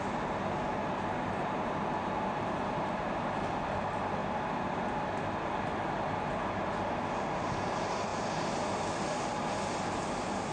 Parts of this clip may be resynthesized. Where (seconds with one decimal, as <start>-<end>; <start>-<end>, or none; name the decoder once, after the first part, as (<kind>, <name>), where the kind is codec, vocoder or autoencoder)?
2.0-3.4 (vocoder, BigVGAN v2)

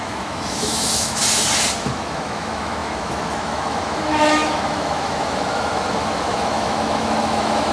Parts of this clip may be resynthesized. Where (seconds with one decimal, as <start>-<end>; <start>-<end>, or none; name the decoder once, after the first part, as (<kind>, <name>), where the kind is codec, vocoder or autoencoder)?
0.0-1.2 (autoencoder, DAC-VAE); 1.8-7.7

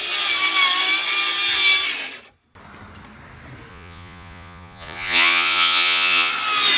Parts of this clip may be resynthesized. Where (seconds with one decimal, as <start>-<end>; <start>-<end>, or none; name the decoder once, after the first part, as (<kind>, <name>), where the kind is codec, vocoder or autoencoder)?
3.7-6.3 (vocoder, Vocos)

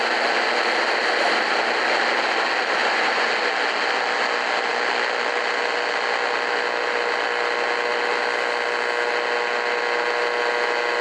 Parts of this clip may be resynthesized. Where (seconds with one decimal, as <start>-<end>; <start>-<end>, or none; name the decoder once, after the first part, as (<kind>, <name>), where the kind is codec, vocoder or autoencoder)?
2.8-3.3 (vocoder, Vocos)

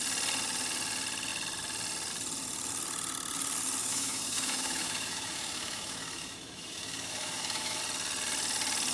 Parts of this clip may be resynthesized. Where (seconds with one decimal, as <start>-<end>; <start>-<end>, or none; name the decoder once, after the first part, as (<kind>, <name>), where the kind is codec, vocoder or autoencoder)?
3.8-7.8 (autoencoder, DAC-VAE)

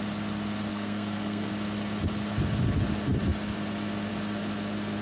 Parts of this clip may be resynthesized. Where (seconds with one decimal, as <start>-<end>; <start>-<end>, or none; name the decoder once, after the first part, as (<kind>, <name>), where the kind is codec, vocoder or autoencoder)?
0.7-1.5 (codec, SNAC)

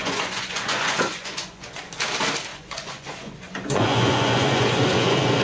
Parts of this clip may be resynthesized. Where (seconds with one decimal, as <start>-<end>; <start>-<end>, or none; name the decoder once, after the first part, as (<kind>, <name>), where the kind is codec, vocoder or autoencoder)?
0.0-1.9 (vocoder, Vocos); 2.5-5.4

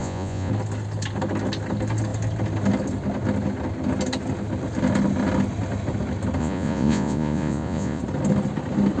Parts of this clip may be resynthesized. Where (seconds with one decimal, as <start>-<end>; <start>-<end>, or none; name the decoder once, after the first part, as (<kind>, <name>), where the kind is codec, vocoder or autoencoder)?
0.0-0.5 (vocoder, Vocos); 6.4-8.0